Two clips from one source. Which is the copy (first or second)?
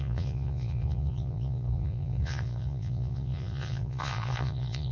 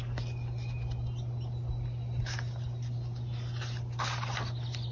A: first